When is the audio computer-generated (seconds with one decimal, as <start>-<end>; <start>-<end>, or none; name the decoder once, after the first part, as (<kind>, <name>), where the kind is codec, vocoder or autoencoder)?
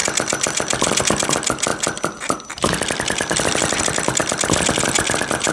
none